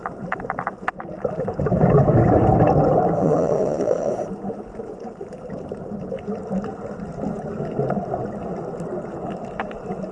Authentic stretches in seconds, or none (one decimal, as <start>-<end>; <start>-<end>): 0.0-3.2; 4.1-10.1